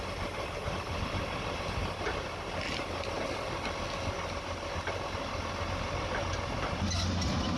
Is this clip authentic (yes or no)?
yes